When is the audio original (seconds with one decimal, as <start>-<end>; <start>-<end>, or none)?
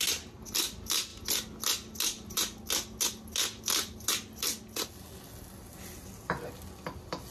0.0-7.3